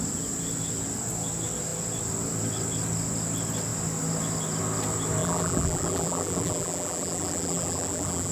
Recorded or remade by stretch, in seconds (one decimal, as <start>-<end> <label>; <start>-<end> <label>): 0.0-5.2 recorded; 5.2-8.3 remade